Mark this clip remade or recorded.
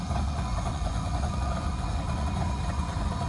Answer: remade